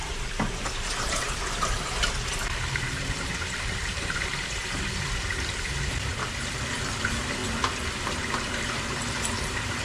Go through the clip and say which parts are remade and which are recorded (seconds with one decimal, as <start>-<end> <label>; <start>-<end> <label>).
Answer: 0.0-6.1 remade; 6.1-6.7 recorded; 6.7-7.4 remade; 7.4-8.0 recorded; 8.0-9.8 remade